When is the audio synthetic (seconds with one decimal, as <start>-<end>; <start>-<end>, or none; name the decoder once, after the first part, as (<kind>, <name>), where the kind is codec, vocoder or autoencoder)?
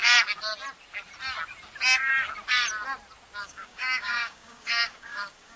3.4-5.6 (codec, DAC)